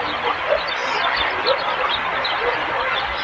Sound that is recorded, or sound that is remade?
recorded